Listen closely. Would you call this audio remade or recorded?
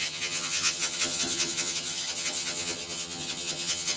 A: remade